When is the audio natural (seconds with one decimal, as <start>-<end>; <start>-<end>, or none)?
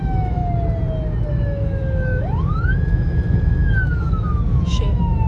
0.4-1.3